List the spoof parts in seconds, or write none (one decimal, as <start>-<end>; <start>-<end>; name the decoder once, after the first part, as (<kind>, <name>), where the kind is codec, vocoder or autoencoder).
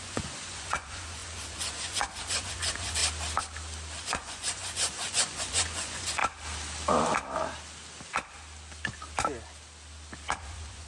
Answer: 0.0-3.0 (vocoder, Vocos); 4.0-6.2; 10.4-10.9